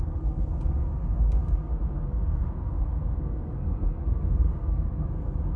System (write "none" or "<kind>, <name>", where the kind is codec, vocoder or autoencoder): codec, SNAC